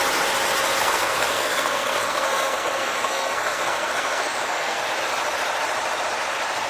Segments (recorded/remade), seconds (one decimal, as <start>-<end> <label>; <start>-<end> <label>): 0.0-0.8 recorded; 0.8-4.8 remade; 4.8-6.7 recorded